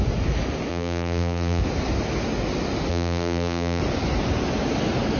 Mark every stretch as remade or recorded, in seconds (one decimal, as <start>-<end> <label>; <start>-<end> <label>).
0.0-0.7 recorded; 0.7-1.6 remade; 1.6-2.9 recorded; 2.9-3.8 remade; 3.8-5.2 recorded